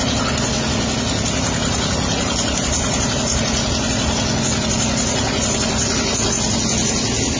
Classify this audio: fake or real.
real